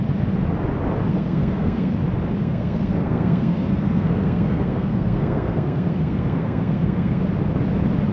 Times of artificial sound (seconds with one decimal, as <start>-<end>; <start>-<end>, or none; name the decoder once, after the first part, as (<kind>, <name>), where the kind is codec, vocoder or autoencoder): 1.1-1.9 (codec, SNAC); 2.4-7.2